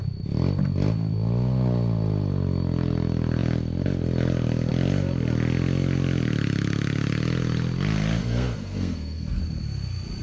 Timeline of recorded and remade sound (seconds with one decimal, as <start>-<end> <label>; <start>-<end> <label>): 0.0-8.2 recorded; 8.2-9.4 remade; 9.4-10.2 recorded